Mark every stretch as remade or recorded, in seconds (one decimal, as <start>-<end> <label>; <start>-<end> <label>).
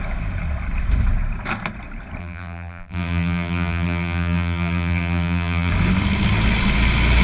0.0-2.2 recorded; 2.2-5.7 remade; 5.7-7.2 recorded